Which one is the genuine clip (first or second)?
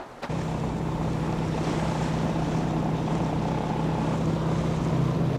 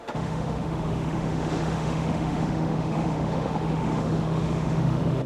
first